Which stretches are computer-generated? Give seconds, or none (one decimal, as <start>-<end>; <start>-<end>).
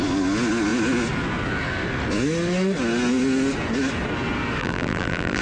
4.6-5.4